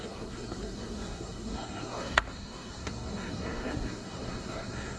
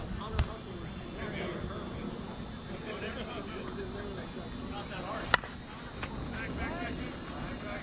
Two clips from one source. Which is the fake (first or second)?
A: first